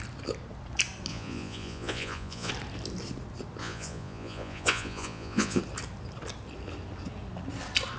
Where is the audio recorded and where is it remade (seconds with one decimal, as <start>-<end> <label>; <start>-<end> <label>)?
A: 0.0-1.1 recorded; 1.1-2.5 remade; 2.5-3.6 recorded; 3.6-5.6 remade; 5.6-8.0 recorded